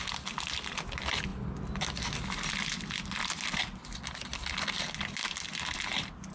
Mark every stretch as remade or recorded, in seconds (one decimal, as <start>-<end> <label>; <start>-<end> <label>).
0.0-6.3 recorded